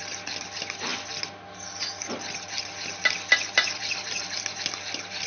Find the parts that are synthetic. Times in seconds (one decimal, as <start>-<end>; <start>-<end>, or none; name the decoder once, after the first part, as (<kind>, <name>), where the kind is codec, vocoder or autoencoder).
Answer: none